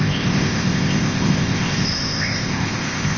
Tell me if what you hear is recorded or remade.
remade